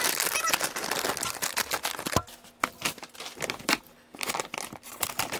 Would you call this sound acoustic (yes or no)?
yes